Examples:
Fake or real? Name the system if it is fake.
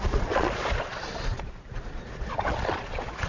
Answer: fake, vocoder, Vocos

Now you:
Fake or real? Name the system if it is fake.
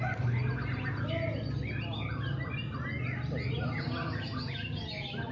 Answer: real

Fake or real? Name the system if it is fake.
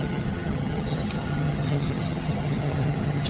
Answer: fake, vocoder, HiFi-GAN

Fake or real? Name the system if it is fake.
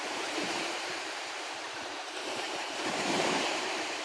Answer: fake, vocoder, BigVGAN v2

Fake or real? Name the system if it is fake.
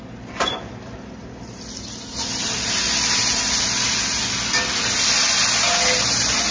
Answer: real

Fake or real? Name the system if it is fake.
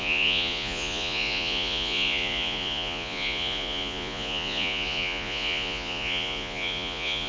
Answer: fake, vocoder, Vocos